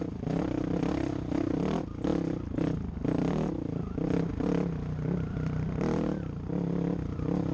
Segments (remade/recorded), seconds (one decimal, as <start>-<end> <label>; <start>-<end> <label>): 0.0-7.5 recorded